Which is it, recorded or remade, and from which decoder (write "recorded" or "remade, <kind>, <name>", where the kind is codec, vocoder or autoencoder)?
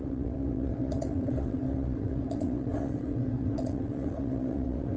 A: remade, vocoder, WaveNeXt